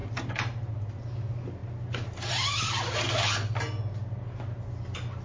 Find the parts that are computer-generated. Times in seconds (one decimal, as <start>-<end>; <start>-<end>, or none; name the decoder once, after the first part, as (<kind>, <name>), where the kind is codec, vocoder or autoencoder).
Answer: none

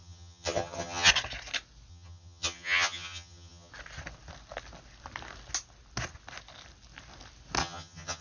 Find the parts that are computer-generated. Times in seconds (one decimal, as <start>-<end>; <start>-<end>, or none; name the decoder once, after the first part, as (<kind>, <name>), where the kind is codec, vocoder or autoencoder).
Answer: 0.0-1.1 (vocoder, HiFi-GAN); 1.9-3.7; 7.6-8.2